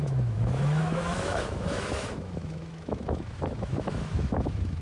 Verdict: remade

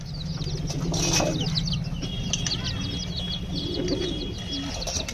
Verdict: recorded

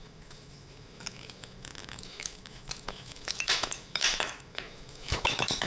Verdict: remade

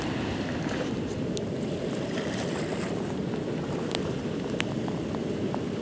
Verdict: recorded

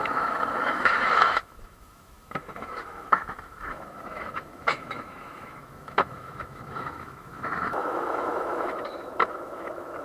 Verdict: remade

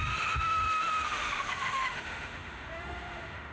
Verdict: remade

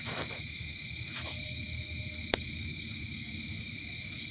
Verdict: remade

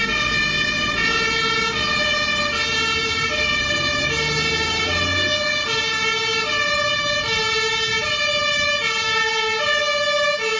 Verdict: recorded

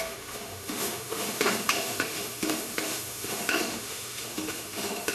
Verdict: remade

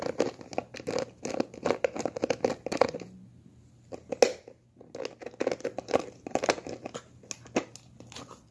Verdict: recorded